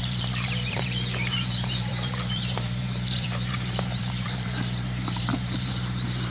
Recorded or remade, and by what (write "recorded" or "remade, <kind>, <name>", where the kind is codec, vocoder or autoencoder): remade, vocoder, BigVGAN v2